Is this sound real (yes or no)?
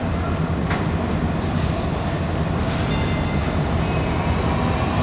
yes